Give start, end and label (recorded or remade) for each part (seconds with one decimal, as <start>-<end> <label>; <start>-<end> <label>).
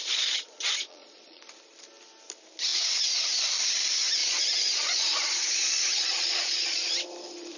0.0-1.4 remade; 1.4-4.2 recorded; 4.2-6.9 remade; 6.9-7.6 recorded